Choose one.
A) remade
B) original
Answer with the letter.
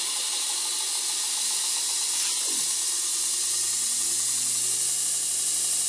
B